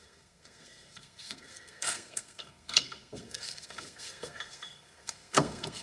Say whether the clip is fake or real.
fake